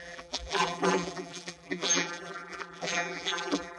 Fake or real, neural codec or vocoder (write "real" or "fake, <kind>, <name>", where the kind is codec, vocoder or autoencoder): fake, vocoder, BigVGAN v2